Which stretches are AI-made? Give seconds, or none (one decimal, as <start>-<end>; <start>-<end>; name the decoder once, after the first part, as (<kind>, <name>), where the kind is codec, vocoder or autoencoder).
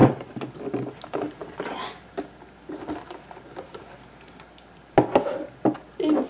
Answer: 0.0-0.5 (vocoder, BigVGAN v2)